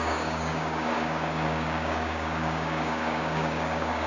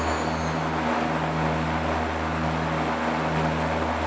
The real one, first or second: second